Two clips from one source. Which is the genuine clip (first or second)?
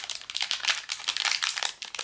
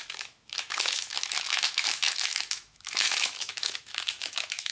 first